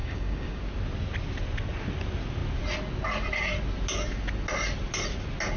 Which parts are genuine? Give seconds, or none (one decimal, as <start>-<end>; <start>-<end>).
0.6-5.6